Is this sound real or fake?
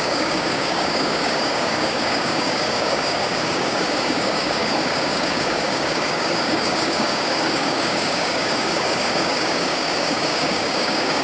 fake